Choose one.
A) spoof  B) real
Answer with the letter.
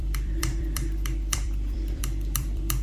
A